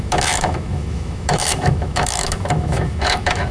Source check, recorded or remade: remade